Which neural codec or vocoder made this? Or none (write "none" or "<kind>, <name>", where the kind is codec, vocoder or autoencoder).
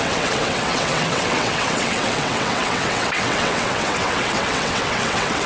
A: vocoder, WaveNeXt